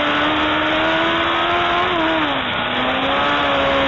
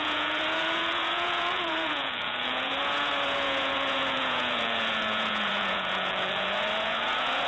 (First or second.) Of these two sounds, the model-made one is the second